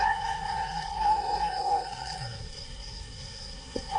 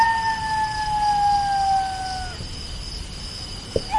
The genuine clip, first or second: second